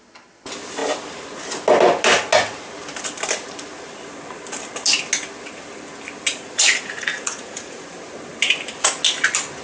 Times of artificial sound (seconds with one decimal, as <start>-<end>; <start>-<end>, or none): 6.3-7.9